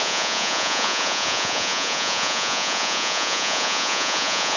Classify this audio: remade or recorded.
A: remade